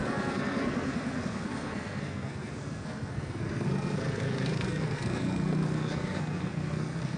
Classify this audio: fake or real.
fake